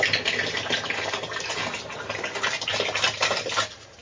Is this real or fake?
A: real